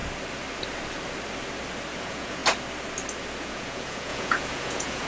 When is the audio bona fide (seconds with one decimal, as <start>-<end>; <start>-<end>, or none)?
0.0-2.0; 2.4-3.4